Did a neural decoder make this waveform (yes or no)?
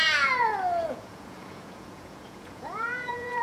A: yes